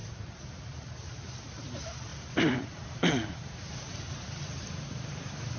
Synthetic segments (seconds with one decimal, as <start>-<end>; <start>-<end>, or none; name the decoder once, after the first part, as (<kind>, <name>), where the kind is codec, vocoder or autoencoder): 0.0-0.6 (vocoder, BigVGAN v2); 2.1-5.6